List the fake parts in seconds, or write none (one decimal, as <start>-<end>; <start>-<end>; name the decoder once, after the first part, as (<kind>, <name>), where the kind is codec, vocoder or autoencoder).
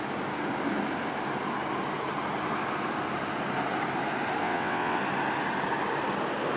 4.4-5.0 (vocoder, WaveNeXt)